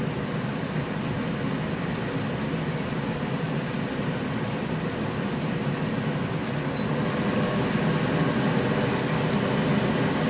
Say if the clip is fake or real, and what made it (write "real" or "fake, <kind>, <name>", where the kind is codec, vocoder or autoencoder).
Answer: real